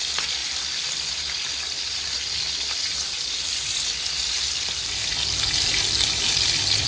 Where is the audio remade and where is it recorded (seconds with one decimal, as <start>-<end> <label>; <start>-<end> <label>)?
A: 0.0-0.4 recorded; 0.4-4.0 remade; 4.0-6.9 recorded